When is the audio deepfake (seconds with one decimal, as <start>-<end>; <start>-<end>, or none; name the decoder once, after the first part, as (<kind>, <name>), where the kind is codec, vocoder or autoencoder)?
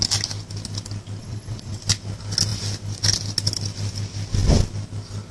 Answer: 1.2-1.8 (vocoder, WaveNeXt)